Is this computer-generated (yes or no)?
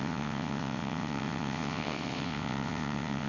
yes